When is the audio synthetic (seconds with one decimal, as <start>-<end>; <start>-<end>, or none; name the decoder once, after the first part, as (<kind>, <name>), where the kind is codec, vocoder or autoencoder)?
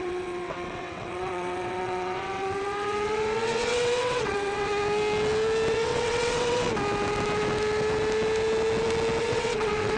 0.0-4.7 (vocoder, WaveNeXt); 5.7-6.7; 9.2-10.0